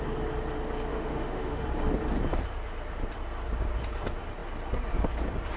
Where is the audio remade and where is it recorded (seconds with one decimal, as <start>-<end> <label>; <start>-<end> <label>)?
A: 0.0-0.9 recorded; 0.9-1.6 remade; 1.6-5.6 recorded